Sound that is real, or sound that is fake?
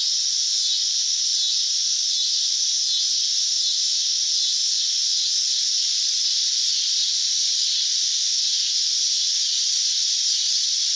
real